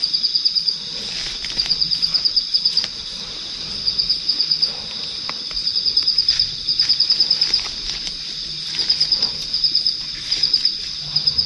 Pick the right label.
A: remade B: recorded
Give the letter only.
B